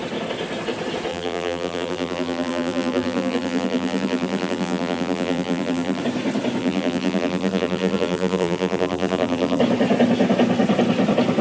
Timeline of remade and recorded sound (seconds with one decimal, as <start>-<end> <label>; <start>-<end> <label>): 0.0-1.1 recorded; 1.1-6.0 remade; 6.0-6.6 recorded; 6.6-9.6 remade; 9.6-11.4 recorded